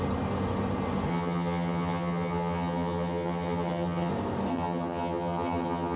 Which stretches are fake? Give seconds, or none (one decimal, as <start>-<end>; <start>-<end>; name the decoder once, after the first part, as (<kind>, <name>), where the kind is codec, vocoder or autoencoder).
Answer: 1.1-4.1 (vocoder, HiFi-GAN); 4.5-6.0